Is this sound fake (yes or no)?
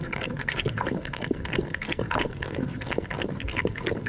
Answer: yes